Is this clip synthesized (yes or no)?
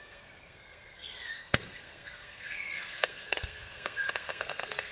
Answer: yes